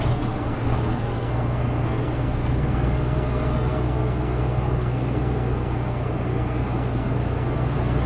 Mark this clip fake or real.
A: fake